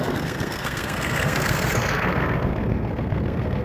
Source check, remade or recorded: remade